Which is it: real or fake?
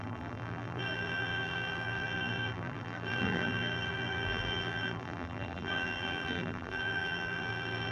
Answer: fake